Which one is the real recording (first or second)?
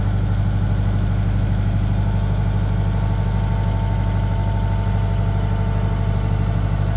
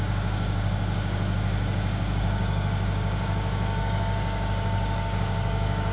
first